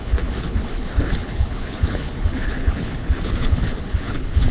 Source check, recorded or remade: remade